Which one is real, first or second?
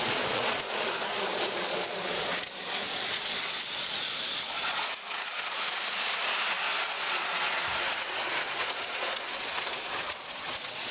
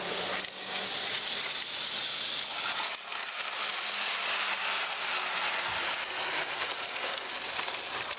second